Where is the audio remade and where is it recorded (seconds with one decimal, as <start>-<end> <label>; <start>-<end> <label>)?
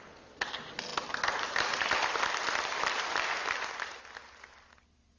0.0-5.2 recorded